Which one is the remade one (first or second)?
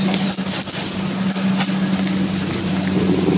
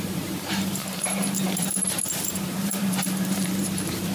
second